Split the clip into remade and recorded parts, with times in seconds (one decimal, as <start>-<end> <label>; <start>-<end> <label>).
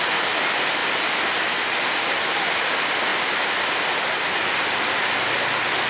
0.0-5.9 recorded